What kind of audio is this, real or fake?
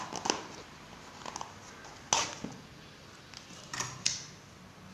real